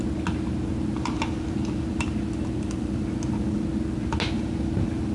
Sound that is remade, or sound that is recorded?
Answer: recorded